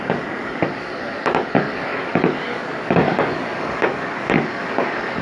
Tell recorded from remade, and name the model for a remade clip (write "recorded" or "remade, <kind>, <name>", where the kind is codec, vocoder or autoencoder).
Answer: remade, codec, DAC